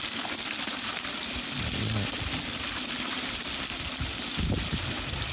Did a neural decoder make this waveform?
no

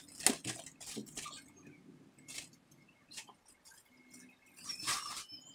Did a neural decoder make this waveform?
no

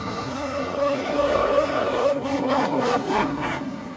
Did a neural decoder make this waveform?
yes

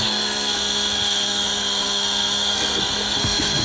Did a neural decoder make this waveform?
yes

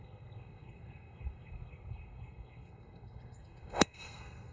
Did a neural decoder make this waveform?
yes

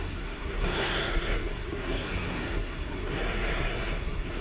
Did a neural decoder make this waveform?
yes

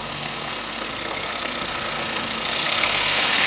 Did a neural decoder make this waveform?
yes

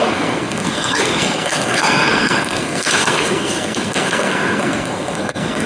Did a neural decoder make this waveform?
yes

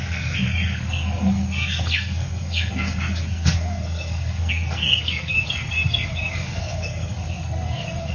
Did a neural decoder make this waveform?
yes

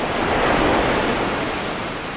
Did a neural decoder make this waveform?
no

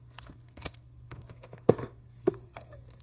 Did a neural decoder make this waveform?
yes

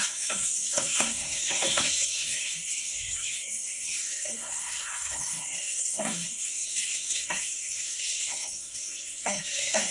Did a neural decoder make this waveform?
yes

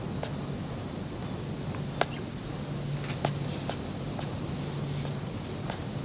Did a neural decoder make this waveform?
no